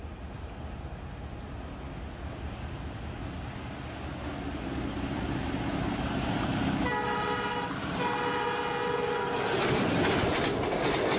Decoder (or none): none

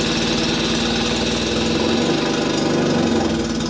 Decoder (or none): none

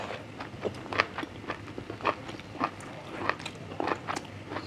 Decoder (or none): none